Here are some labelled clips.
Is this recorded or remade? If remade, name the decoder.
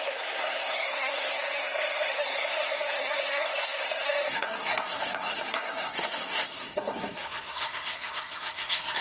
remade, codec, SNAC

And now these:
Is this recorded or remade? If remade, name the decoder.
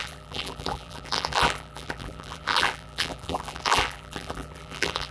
remade, vocoder, BigVGAN v2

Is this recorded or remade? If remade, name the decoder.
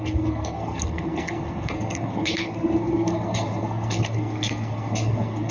remade, codec, SNAC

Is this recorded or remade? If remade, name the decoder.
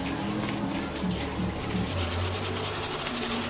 recorded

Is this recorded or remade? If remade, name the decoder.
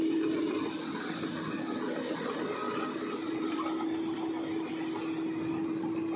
recorded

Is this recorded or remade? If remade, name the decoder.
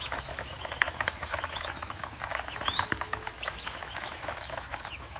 remade, autoencoder, DAC-VAE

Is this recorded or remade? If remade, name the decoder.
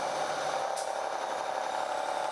recorded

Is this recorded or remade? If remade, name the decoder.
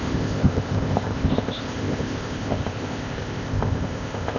remade, codec, ZipCodec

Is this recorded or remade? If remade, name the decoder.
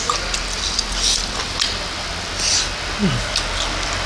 recorded